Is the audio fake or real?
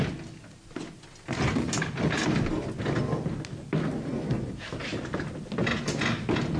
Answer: real